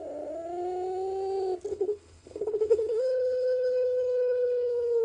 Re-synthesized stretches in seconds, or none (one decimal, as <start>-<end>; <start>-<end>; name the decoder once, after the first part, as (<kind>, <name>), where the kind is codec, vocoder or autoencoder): 1.7-5.0 (codec, HILCodec)